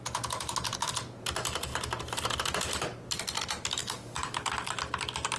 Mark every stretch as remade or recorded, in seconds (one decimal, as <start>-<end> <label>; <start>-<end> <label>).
0.0-3.8 recorded; 3.8-4.7 remade; 4.7-5.4 recorded